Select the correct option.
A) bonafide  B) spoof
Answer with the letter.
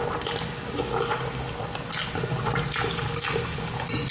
A